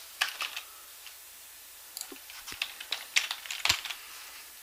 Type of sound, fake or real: real